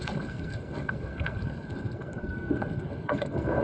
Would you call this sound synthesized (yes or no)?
yes